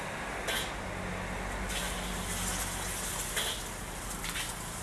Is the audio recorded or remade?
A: recorded